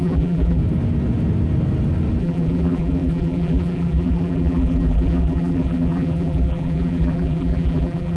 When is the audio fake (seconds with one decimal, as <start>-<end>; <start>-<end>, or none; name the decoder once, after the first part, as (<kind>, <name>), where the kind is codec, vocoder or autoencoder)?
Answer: 0.0-0.6 (vocoder, BigVGAN v2); 2.2-8.2